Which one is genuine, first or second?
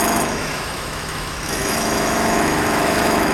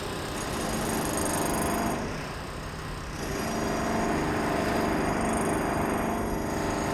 second